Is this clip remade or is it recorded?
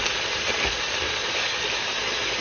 recorded